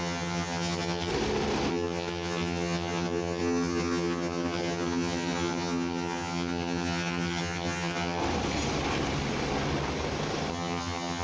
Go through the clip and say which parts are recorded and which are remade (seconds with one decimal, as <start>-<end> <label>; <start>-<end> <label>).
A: 0.0-1.1 remade; 1.1-1.7 recorded; 1.7-8.2 remade; 8.2-10.5 recorded; 10.5-11.2 remade